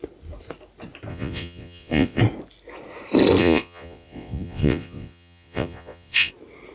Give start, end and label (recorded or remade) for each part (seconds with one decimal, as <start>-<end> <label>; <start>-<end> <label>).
0.0-1.1 recorded; 1.1-2.2 remade; 2.2-3.4 recorded; 3.4-6.3 remade; 6.3-6.7 recorded